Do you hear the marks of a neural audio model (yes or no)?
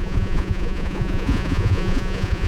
yes